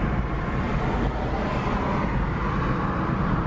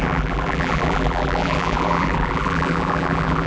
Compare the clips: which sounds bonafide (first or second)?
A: first